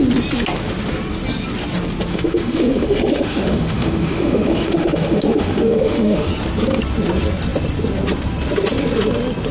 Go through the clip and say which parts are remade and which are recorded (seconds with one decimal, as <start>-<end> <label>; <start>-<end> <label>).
0.0-2.1 recorded; 2.1-6.3 remade; 6.3-9.5 recorded